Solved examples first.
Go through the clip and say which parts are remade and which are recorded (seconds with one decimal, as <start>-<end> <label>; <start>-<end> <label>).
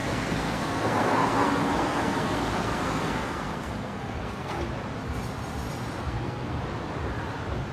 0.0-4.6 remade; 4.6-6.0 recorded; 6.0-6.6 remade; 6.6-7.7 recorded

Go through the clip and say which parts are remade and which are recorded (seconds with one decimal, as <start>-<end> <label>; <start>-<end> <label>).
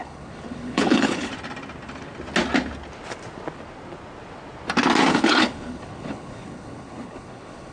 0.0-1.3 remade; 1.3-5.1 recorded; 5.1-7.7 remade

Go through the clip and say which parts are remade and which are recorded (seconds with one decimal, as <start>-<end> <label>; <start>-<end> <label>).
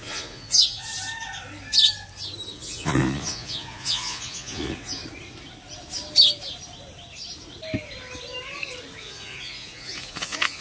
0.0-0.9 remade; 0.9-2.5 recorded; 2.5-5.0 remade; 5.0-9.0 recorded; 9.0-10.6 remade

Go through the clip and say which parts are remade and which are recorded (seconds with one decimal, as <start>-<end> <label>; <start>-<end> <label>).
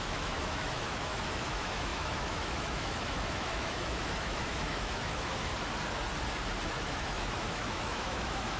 0.0-5.5 remade; 5.5-6.7 recorded; 6.7-8.6 remade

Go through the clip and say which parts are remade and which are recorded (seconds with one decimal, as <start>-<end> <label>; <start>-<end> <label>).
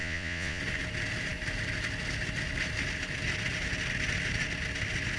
0.0-0.6 remade; 0.6-5.2 recorded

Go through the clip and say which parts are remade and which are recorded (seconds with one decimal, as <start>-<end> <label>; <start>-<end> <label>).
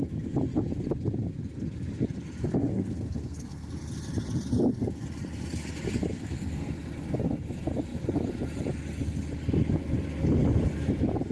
0.0-2.7 recorded; 2.7-3.7 remade; 3.7-6.1 recorded; 6.1-6.7 remade; 6.7-11.3 recorded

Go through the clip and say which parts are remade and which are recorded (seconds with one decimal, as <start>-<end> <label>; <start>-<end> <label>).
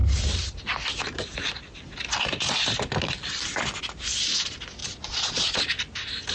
0.0-4.8 recorded; 4.8-5.6 remade; 5.6-6.3 recorded